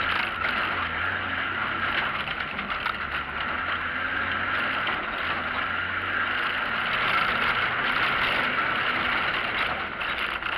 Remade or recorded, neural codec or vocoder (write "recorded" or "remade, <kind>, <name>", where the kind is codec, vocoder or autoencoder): recorded